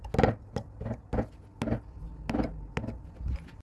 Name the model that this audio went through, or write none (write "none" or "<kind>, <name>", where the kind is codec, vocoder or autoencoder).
none